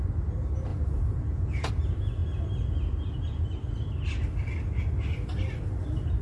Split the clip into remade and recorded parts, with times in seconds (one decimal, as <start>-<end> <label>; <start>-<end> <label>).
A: 0.0-0.7 recorded; 0.7-1.7 remade; 1.7-6.2 recorded